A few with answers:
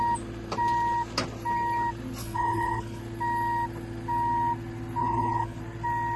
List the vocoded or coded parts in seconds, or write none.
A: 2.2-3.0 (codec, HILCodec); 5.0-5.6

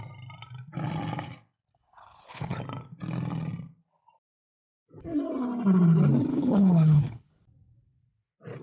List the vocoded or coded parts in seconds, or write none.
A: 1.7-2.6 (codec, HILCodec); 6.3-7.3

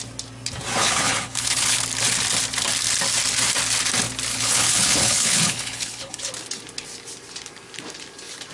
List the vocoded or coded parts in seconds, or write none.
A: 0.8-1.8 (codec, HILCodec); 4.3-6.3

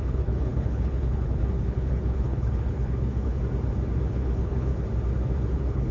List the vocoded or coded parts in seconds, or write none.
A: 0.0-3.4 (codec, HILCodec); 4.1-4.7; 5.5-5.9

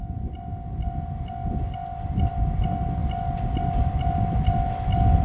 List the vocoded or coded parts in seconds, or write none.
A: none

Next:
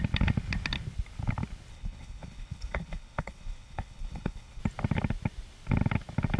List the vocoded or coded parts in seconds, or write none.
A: 1.7-4.6 (codec, HILCodec)

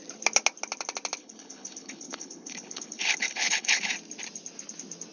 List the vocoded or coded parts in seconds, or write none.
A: 1.2-3.9 (codec, HILCodec)